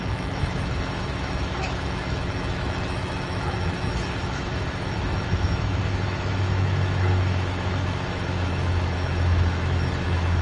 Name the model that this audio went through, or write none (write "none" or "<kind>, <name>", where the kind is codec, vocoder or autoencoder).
autoencoder, DAC-VAE